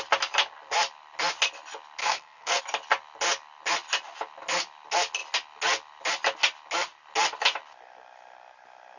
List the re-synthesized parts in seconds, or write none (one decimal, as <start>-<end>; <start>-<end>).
2.0-2.6

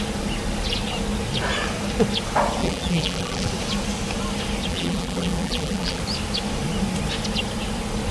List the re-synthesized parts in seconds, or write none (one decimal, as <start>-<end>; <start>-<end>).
2.6-3.5; 4.7-6.0

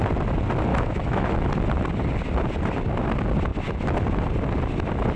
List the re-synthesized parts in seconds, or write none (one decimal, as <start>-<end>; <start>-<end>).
0.7-1.5

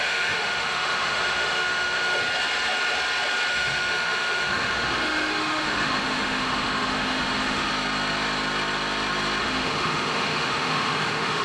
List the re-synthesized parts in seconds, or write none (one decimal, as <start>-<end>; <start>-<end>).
0.0-2.2; 3.5-7.7; 9.4-11.4